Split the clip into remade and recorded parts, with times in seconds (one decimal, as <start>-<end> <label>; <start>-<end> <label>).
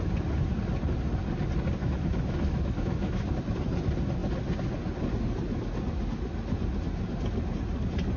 0.0-1.8 recorded; 1.8-3.3 remade; 3.3-8.2 recorded